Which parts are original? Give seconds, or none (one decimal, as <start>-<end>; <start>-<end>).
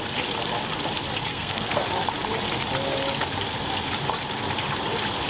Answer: 0.0-1.3; 1.8-5.3